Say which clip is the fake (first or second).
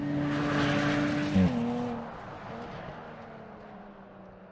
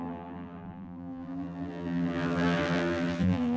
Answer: second